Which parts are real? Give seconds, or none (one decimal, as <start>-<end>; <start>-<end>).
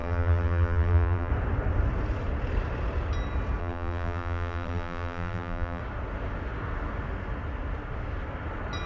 1.3-3.6; 5.8-8.9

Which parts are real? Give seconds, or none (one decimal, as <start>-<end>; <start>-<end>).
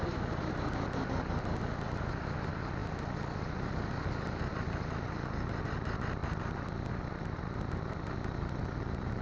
0.0-6.2; 6.9-9.2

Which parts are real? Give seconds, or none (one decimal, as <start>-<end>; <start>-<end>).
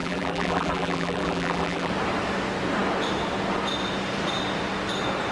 1.9-5.3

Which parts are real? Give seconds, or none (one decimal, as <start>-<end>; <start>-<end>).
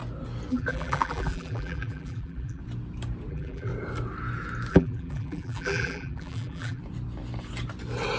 0.0-0.5; 2.6-3.3; 3.7-4.7; 6.8-8.2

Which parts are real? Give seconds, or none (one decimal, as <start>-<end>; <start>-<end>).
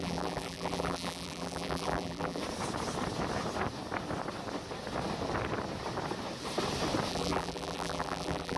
2.4-7.1